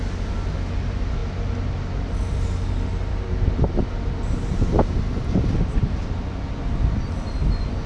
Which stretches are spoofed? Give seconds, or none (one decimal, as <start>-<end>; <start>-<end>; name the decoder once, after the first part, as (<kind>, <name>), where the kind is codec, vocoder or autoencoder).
none